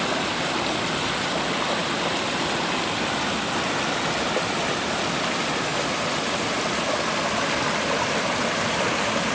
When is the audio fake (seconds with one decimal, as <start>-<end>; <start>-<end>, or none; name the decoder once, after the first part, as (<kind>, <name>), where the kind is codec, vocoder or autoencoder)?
none

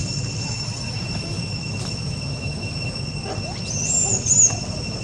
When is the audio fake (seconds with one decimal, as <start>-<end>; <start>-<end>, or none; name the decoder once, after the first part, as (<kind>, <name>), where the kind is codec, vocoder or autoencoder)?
0.0-3.0 (autoencoder, DAC-VAE)

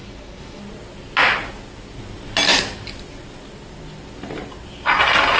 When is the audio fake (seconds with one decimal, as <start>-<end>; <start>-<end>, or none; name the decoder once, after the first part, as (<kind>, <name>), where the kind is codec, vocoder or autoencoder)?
0.0-0.6 (autoencoder, DAC-VAE)

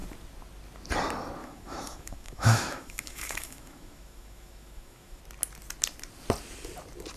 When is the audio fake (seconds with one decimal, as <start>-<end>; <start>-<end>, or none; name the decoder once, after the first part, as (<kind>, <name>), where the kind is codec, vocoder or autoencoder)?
1.4-5.2 (autoencoder, DAC-VAE)

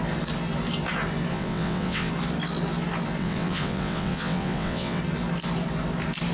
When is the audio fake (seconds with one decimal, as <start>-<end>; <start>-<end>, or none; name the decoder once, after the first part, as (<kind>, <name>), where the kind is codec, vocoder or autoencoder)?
1.3-2.1 (vocoder, WaveNeXt); 3.2-5.0

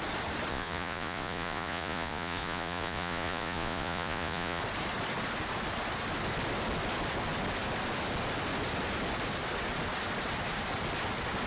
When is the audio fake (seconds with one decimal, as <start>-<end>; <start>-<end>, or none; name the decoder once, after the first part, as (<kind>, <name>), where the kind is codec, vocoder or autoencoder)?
0.5-4.6 (vocoder, Vocos)

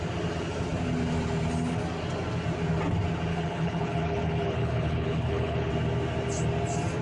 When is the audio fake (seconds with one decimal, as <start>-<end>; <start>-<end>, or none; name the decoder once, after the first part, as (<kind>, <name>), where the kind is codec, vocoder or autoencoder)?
3.3-5.7 (codec, HILCodec)

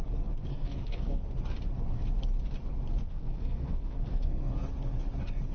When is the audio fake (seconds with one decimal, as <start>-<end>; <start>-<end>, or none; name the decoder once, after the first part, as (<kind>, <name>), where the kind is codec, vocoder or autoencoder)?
0.5-1.2 (codec, SNAC); 3.0-4.5